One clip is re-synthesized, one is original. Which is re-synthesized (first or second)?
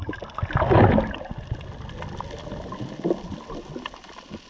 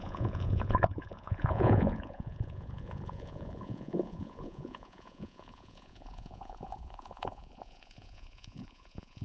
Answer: second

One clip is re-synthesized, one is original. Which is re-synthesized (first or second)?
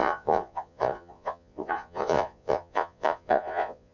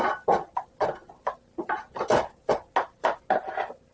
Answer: first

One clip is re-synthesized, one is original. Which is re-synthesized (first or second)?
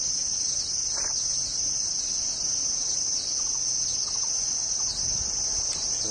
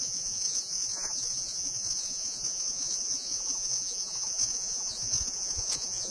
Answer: second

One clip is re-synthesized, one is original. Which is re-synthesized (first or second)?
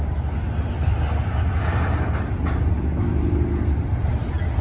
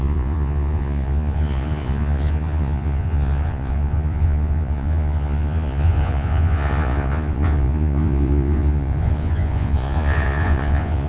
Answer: second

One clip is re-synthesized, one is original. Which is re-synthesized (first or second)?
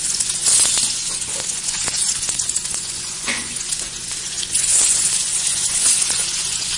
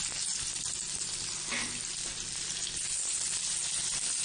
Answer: first